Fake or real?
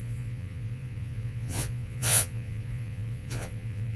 fake